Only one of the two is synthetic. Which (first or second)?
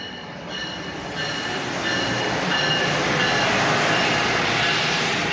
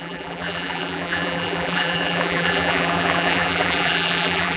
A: second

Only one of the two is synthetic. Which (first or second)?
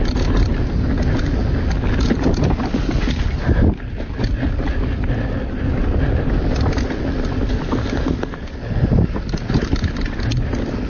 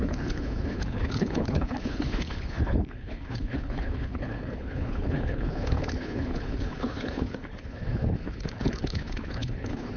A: second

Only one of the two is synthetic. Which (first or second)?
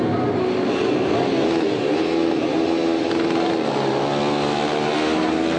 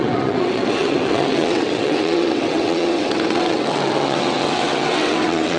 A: second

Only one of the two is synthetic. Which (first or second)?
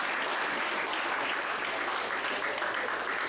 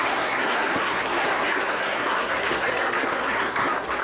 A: second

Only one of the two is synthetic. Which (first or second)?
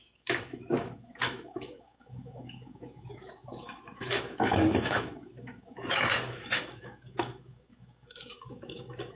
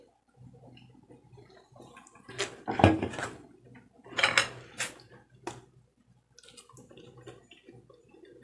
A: first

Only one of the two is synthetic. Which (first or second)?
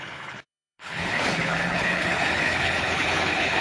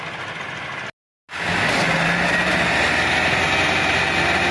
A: first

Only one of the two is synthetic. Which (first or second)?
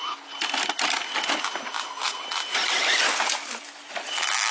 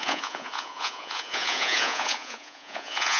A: second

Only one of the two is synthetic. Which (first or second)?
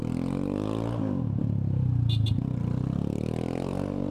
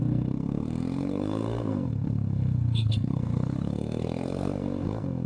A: second